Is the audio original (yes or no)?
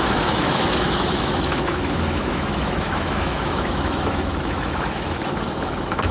no